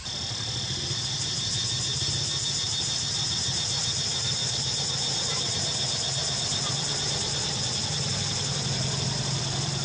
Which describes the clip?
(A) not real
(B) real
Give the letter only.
B